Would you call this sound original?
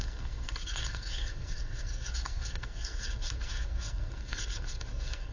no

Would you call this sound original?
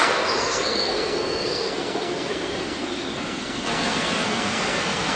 no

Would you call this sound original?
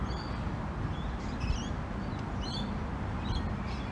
yes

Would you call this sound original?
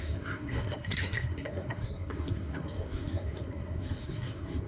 no